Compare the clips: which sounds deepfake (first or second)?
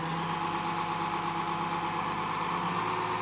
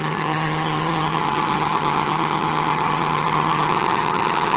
second